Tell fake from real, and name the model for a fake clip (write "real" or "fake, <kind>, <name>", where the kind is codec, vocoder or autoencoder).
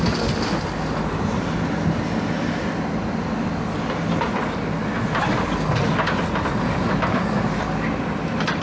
real